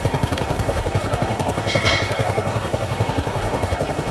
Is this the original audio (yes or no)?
no